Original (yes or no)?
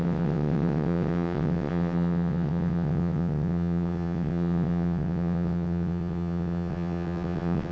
no